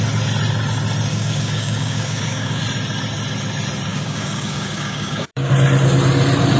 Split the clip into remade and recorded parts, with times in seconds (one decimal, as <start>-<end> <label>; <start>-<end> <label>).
0.0-1.1 recorded; 1.1-2.6 remade; 2.6-3.9 recorded; 3.9-5.5 remade; 5.5-6.6 recorded